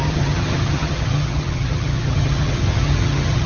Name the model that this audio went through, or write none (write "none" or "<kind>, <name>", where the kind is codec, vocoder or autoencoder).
vocoder, HiFi-GAN